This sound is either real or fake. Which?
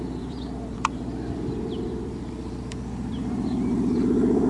fake